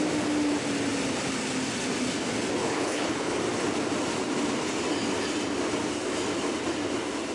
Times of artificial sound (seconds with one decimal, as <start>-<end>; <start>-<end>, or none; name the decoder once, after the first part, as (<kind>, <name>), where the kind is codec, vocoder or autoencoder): 2.6-3.3 (codec, HILCodec)